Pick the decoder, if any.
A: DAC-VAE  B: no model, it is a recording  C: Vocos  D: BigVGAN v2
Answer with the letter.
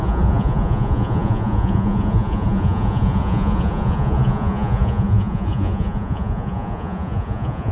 C